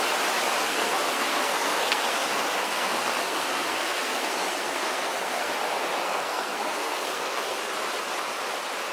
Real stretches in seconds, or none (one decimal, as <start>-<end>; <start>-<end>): 0.0-0.6; 5.5-6.0; 7.6-8.9